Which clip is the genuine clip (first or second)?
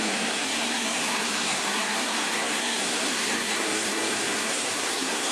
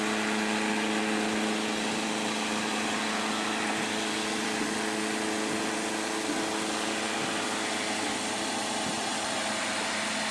second